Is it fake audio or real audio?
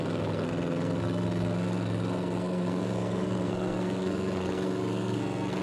fake